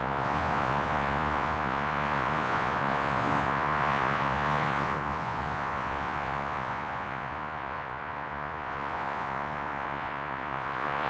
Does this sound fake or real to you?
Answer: fake